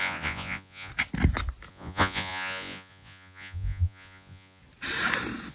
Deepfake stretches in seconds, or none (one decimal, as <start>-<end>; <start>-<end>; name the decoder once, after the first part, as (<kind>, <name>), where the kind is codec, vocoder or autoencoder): 0.0-0.9 (vocoder, Vocos); 1.7-4.6